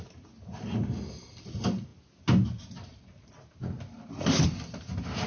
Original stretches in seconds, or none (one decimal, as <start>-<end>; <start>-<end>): 0.0-5.3